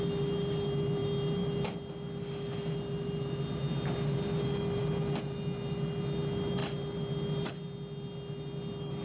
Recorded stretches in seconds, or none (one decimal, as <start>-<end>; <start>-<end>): 0.0-9.0